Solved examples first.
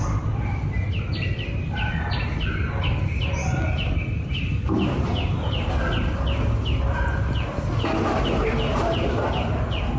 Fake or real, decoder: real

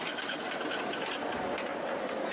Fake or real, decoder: real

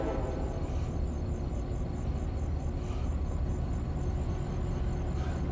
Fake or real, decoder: real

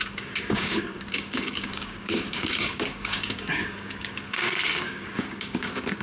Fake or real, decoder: fake, codec, DAC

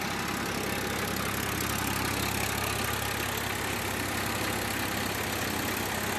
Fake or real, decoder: real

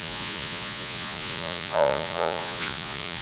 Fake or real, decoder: fake, vocoder, Vocos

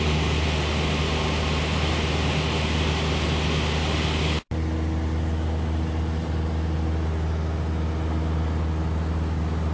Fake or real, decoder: real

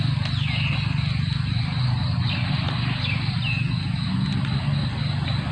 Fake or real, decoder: real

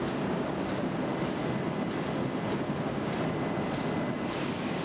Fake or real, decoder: real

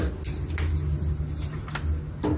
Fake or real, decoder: real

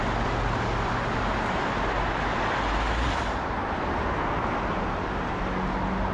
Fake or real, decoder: real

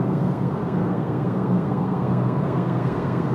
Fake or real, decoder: fake, codec, SNAC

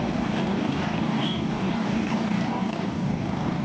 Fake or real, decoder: fake, codec, DAC